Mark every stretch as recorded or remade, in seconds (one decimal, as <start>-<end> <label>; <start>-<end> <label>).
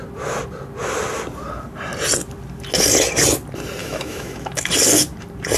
0.0-3.8 recorded; 3.8-4.7 remade; 4.7-5.6 recorded